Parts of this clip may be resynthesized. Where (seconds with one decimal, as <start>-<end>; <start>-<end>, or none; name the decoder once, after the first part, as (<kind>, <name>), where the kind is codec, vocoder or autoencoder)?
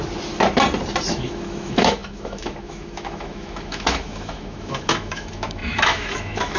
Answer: 1.1-6.6 (autoencoder, DAC-VAE)